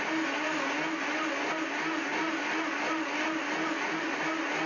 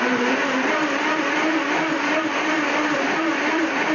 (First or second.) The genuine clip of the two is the first